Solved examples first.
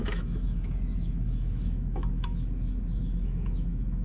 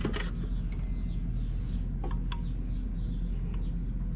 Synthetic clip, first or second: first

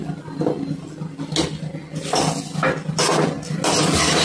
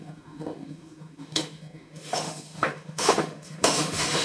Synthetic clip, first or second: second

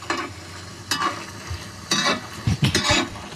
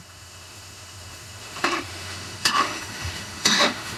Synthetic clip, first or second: second